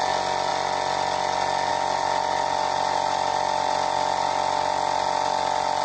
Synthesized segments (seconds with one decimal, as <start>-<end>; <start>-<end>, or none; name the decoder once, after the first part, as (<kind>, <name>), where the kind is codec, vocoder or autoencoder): none